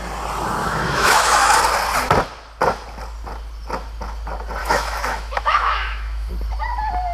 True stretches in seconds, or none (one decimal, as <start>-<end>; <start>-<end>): 0.0-0.6; 1.6-4.6; 6.3-7.1